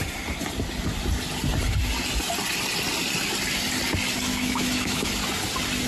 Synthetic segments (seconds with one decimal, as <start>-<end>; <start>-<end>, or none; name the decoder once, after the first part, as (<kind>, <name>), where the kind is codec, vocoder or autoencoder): 4.3-5.1 (autoencoder, DAC-VAE)